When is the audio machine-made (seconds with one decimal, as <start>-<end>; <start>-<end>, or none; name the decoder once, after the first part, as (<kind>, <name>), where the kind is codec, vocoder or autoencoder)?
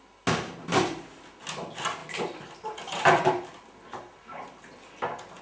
2.0-4.6 (vocoder, BigVGAN v2)